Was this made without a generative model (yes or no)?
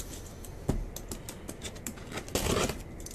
yes